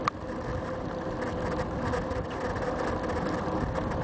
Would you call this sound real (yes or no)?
yes